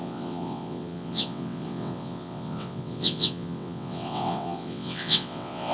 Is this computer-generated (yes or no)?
yes